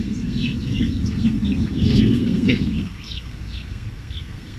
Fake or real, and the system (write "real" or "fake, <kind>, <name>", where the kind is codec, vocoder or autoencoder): fake, codec, SNAC